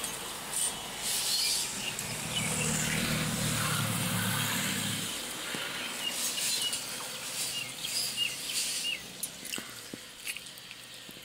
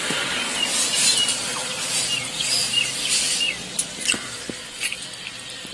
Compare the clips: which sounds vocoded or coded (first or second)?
second